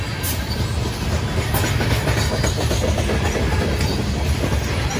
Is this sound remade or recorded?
recorded